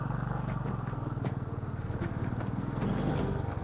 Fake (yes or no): yes